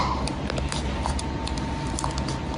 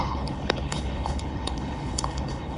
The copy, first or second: second